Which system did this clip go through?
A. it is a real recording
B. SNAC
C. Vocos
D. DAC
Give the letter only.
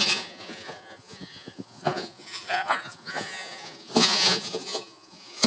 C